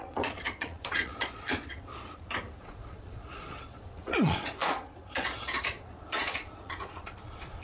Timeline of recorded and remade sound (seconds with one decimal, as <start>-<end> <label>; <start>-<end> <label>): 0.0-1.9 remade; 1.9-2.6 recorded; 2.6-7.6 remade